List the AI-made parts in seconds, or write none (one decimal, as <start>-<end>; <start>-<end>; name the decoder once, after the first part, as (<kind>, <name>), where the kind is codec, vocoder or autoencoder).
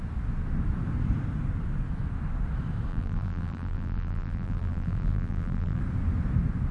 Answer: 2.9-5.8 (vocoder, BigVGAN v2)